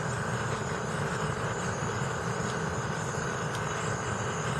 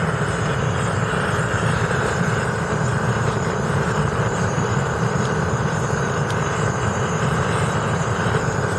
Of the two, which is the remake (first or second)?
second